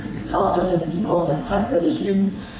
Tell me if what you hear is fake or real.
fake